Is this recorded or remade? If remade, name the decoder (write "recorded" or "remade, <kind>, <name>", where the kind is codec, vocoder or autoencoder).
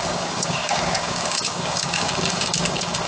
remade, codec, DAC